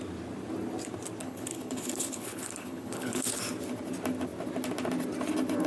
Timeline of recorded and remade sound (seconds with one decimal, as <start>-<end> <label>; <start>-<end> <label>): 0.0-1.2 recorded; 1.2-3.4 remade; 3.4-5.7 recorded